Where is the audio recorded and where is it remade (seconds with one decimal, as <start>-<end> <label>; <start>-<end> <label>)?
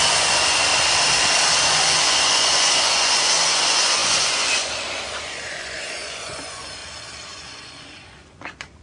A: 0.0-0.7 remade; 0.7-1.6 recorded; 1.6-6.8 remade; 6.8-7.3 recorded; 7.3-8.8 remade